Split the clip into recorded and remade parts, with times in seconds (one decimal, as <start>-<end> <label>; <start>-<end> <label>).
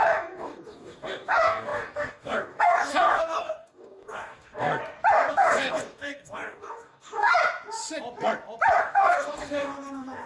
0.0-4.7 remade; 4.7-5.3 recorded; 5.3-7.3 remade; 7.3-8.8 recorded; 8.8-10.3 remade